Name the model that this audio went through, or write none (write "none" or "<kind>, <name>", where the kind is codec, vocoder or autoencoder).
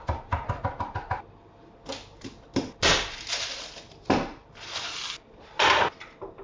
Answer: none